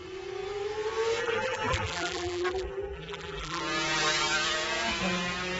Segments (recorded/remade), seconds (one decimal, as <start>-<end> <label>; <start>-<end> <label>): 0.0-1.2 recorded; 1.2-3.6 remade; 3.6-5.6 recorded